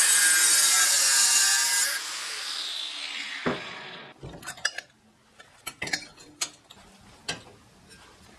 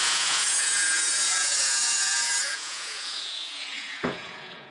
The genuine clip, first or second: first